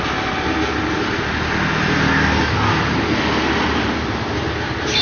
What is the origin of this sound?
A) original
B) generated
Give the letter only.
A